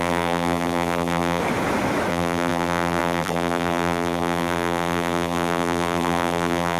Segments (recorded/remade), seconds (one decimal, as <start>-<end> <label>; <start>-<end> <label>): 0.0-1.4 remade; 1.4-2.1 recorded; 2.1-6.8 remade